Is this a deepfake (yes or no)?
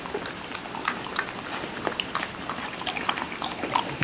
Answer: no